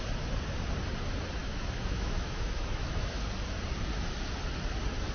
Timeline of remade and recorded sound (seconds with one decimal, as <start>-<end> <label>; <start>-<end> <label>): 0.0-1.4 recorded; 1.4-3.2 remade; 3.2-5.1 recorded